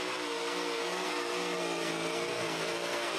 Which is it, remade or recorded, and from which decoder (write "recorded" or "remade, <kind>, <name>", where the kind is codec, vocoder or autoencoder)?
remade, codec, SNAC